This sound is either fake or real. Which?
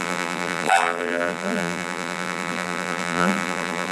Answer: fake